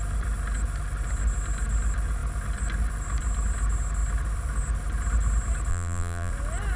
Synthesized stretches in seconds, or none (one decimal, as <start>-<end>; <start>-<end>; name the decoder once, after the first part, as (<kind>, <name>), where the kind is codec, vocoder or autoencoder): 5.7-6.3 (vocoder, BigVGAN v2)